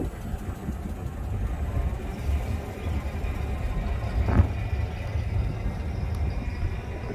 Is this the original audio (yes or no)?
yes